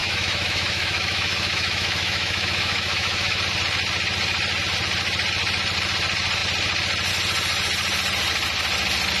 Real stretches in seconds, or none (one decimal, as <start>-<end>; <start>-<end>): 3.4-9.2